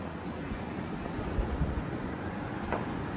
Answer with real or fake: fake